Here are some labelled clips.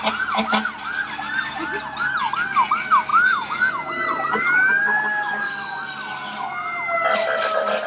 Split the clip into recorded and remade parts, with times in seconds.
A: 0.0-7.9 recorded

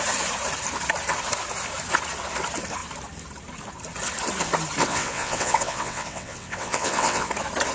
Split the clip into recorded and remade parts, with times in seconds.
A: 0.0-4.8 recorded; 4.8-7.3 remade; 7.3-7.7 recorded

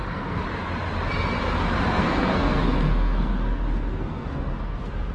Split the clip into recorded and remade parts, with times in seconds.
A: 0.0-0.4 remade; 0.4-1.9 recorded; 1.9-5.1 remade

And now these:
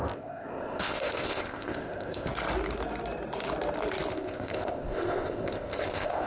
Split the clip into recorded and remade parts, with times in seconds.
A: 0.0-2.3 remade; 2.3-4.1 recorded; 4.1-6.3 remade

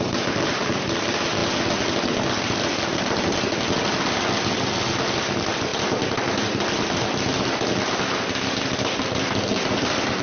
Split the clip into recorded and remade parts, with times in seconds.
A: 0.0-10.2 recorded

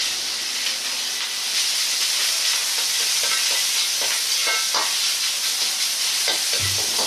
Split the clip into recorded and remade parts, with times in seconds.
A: 0.0-7.1 recorded

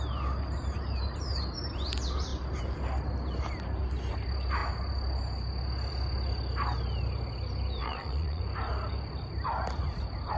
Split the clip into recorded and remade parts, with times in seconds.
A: 0.0-7.8 recorded; 7.8-8.4 remade; 8.4-10.4 recorded